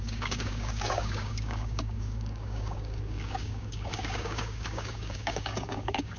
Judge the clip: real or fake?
fake